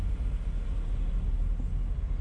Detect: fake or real real